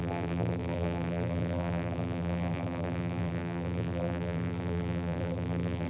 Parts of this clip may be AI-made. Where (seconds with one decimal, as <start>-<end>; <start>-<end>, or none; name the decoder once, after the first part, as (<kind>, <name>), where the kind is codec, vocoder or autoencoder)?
0.0-5.9 (vocoder, BigVGAN v2)